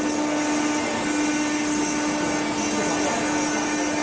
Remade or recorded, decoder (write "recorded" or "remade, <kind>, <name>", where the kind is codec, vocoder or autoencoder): recorded